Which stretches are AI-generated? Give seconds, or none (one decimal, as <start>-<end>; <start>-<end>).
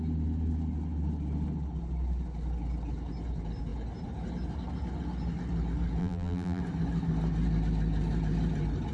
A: 6.0-6.6